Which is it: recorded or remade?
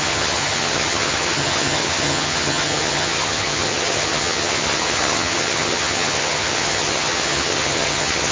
remade